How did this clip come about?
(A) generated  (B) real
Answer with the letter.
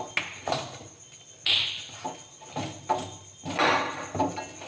B